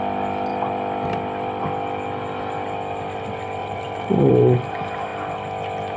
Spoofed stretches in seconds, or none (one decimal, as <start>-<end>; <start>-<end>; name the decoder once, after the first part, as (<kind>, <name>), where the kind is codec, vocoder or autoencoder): 3.6-4.3 (vocoder, BigVGAN v2)